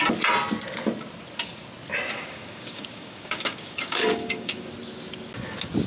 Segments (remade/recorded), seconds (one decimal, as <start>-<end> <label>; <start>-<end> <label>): 0.0-2.1 recorded; 2.1-4.7 remade; 4.7-5.9 recorded